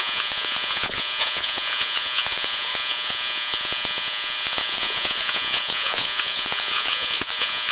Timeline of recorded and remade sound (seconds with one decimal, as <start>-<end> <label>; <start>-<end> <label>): 0.0-7.7 remade